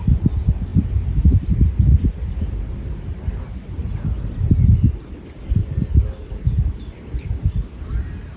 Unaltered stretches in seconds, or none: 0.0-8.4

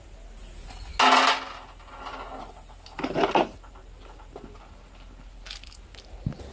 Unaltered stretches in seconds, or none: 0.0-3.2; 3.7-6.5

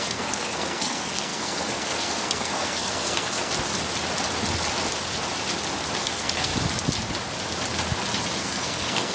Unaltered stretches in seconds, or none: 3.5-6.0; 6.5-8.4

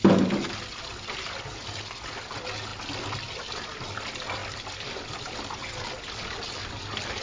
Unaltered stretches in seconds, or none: 0.0-7.2

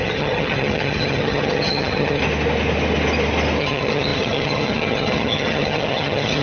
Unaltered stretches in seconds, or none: 2.2-3.6